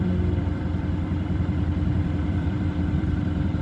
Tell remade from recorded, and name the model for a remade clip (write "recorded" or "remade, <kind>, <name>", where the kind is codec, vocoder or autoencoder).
remade, vocoder, BigVGAN v2